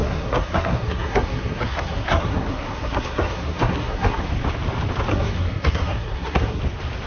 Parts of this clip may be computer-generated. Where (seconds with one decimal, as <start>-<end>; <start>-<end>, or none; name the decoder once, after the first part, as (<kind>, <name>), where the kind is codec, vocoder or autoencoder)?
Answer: 0.0-4.3 (codec, SNAC); 5.1-6.6